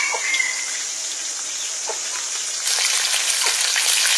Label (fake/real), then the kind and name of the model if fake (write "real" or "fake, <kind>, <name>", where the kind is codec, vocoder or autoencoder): real